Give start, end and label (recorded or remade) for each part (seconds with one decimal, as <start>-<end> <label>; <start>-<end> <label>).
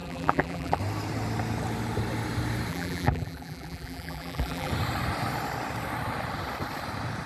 0.0-0.8 remade; 0.8-2.7 recorded; 2.7-4.7 remade; 4.7-7.3 recorded